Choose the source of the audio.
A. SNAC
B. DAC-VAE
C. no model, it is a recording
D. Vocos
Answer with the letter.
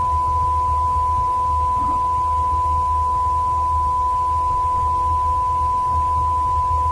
C